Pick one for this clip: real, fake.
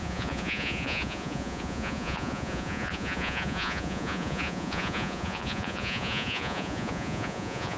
fake